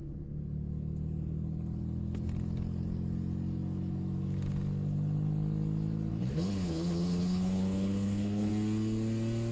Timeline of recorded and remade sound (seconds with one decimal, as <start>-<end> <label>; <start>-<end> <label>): 0.0-6.1 recorded; 6.1-8.5 remade; 8.5-9.5 recorded